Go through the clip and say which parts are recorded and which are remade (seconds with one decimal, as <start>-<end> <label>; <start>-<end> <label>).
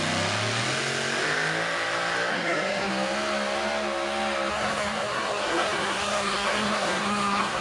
0.0-2.3 recorded; 2.3-2.9 remade; 2.9-4.5 recorded; 4.5-7.6 remade